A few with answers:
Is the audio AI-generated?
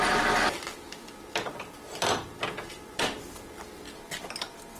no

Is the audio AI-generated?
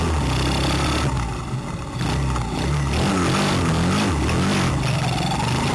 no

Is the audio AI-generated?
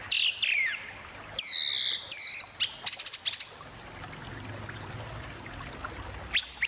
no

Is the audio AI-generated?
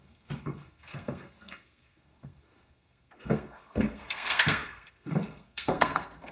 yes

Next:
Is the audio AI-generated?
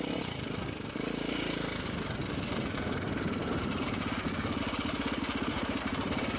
no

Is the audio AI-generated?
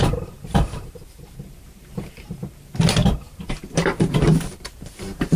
yes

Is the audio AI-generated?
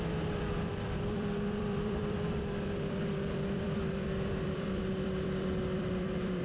yes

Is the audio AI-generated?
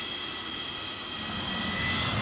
no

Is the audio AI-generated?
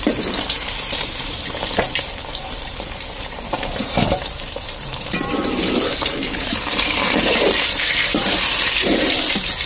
yes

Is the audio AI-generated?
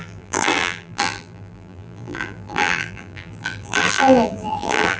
yes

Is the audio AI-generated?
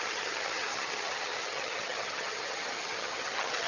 yes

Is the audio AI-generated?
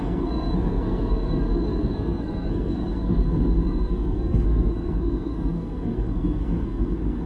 yes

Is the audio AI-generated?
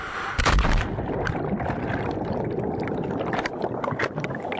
no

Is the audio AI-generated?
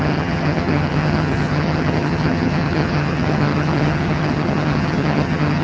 yes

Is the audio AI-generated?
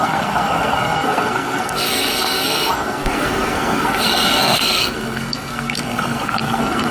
yes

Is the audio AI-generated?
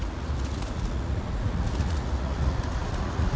yes